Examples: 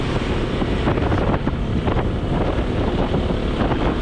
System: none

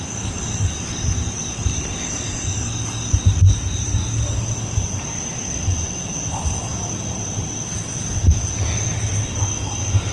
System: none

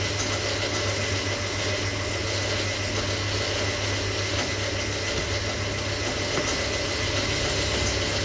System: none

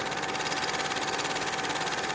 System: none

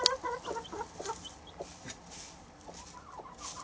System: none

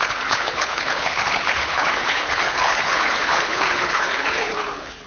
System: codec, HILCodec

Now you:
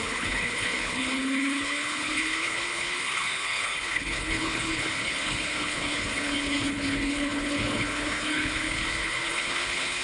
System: codec, HILCodec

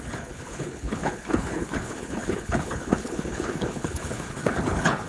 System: codec, HILCodec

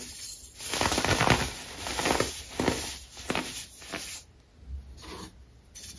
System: none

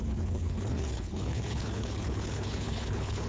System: codec, HILCodec